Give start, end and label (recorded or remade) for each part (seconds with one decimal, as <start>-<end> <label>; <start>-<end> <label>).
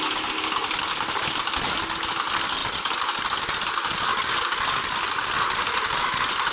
0.0-6.5 recorded